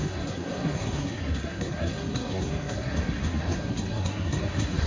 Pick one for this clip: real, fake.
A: fake